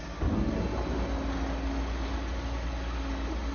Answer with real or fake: real